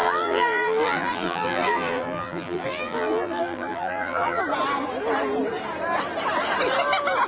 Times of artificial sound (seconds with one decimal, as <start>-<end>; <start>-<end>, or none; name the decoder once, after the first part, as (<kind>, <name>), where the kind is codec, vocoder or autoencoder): 0.0-4.4 (vocoder, BigVGAN v2)